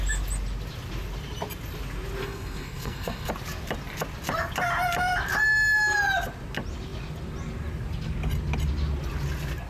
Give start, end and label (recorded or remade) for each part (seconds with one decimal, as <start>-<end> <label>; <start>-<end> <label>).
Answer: 0.0-2.2 recorded; 2.2-3.3 remade; 3.3-9.7 recorded